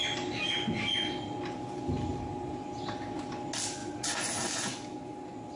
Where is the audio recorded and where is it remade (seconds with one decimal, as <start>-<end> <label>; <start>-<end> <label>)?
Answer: 0.0-5.6 recorded